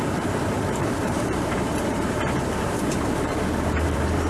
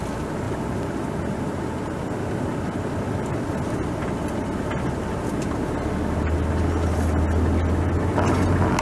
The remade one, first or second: first